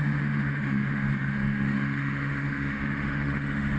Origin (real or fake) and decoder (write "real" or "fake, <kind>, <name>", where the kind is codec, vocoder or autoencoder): fake, autoencoder, DAC-VAE